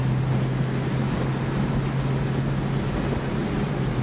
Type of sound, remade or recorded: recorded